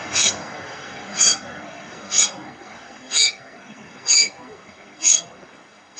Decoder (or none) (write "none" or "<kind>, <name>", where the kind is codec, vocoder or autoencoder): codec, SNAC